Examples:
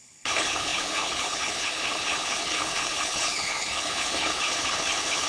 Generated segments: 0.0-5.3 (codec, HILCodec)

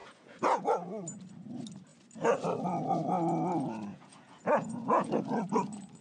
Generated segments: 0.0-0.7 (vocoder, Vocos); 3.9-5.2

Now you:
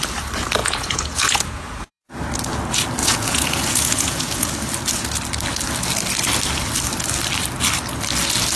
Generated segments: 0.6-2.0 (vocoder, Vocos); 3.0-4.5

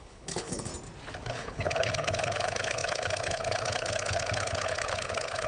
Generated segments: 0.0-0.7 (codec, HILCodec); 1.3-5.5

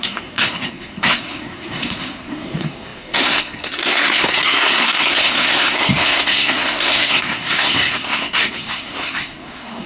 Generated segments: 0.0-9.9 (codec, SNAC)

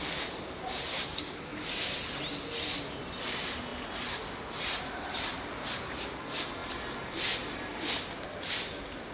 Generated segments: none